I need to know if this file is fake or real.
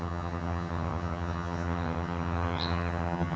fake